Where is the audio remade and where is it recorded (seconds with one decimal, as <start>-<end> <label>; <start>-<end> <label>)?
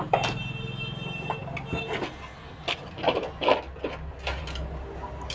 0.0-5.3 recorded